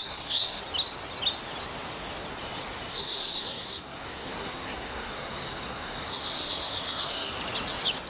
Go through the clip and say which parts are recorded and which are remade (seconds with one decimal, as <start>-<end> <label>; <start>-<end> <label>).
0.0-0.6 remade; 0.6-2.9 recorded; 2.9-7.4 remade; 7.4-8.1 recorded